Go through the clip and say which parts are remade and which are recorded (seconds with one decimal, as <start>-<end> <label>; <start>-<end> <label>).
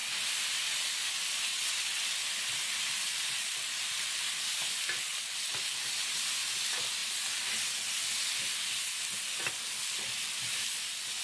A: 0.0-1.5 recorded; 1.5-2.0 remade; 2.0-11.2 recorded